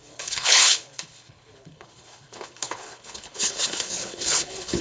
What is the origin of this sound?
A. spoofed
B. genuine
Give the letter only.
A